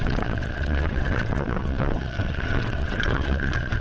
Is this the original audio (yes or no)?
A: no